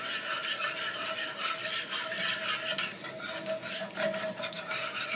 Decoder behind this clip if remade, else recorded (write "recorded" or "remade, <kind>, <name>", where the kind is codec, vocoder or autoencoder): remade, vocoder, BigVGAN v2